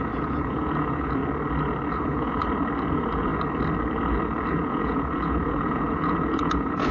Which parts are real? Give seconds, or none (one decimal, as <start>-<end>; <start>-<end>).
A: 1.2-1.9; 2.4-2.9; 3.3-4.5